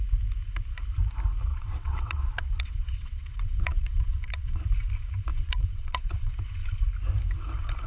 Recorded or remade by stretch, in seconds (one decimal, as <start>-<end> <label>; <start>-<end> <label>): 0.0-1.5 recorded; 1.5-4.6 remade; 4.6-5.3 recorded; 5.3-6.3 remade; 6.3-7.9 recorded

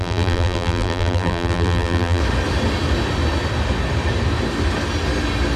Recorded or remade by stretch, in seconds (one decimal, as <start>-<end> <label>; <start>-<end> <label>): 0.0-2.2 remade; 2.2-5.6 recorded

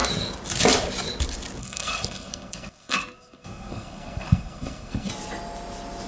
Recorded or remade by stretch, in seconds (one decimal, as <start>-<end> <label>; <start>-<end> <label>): 0.0-1.6 recorded; 1.6-5.1 remade; 5.1-6.1 recorded